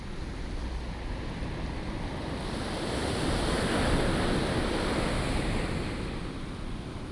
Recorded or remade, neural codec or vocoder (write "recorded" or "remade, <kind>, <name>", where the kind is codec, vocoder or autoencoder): recorded